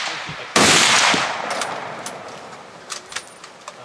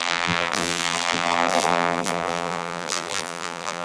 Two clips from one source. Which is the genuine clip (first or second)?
first